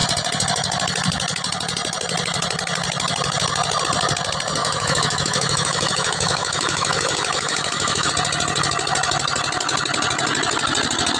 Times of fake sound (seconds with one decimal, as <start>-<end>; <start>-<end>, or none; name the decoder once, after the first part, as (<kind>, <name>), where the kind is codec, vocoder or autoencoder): 4.6-8.1 (autoencoder, DAC-VAE)